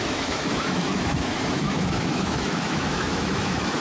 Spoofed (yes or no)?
yes